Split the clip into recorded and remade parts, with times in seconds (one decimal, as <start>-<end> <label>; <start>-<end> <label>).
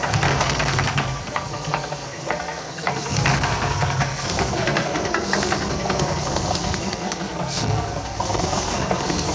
0.0-9.3 remade